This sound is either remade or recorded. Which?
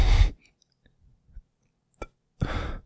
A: recorded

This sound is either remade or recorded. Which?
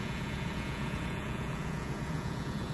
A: remade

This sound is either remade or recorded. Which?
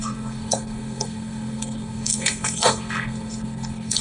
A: remade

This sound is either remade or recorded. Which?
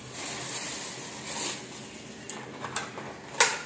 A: recorded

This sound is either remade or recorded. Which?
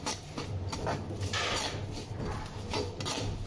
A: recorded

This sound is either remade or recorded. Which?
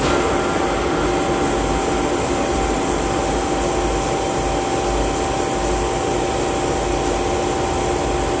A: recorded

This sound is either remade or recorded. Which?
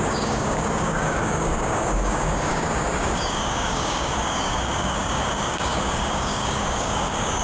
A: remade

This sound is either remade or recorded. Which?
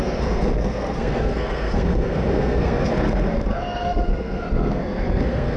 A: remade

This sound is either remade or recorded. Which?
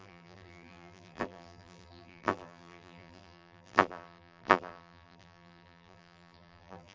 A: remade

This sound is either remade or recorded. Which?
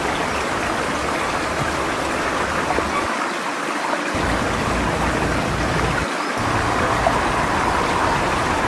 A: recorded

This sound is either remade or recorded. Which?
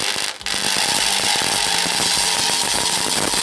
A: recorded